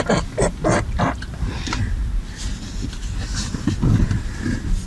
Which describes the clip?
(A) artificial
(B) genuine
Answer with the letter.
B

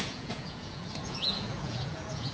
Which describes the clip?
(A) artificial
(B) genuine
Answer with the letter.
A